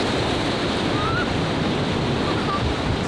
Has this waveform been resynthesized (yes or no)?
no